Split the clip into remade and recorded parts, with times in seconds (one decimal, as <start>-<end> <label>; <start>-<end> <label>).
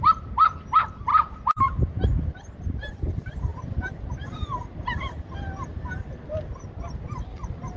0.0-1.1 recorded; 1.1-1.9 remade; 1.9-7.8 recorded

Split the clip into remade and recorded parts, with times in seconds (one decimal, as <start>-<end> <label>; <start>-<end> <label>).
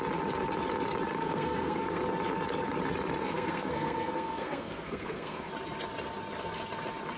0.0-1.2 recorded; 1.2-2.0 remade; 2.0-3.2 recorded; 3.2-5.5 remade; 5.5-7.2 recorded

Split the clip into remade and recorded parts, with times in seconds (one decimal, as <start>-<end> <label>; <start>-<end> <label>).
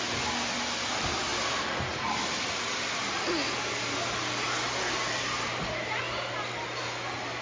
0.0-7.4 recorded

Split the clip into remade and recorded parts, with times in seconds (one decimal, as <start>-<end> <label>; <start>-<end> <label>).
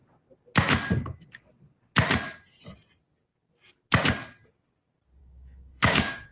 0.0-5.2 recorded; 5.2-6.3 remade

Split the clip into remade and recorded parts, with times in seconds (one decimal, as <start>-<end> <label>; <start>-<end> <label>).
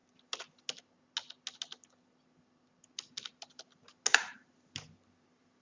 0.0-5.6 recorded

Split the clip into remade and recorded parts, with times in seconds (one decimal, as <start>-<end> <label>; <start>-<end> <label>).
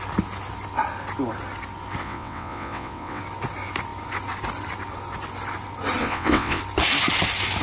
0.0-2.0 recorded; 2.0-3.2 remade; 3.2-6.0 recorded; 6.0-6.6 remade; 6.6-7.6 recorded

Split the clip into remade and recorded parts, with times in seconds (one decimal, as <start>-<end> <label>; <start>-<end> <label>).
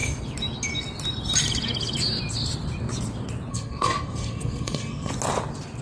0.0-3.5 recorded; 3.5-5.1 remade; 5.1-5.8 recorded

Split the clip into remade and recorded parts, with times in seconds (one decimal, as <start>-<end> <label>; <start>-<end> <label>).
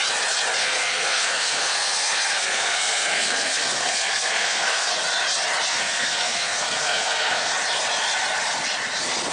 0.0-0.6 recorded; 0.6-4.9 remade; 4.9-5.7 recorded; 5.7-7.5 remade; 7.5-9.3 recorded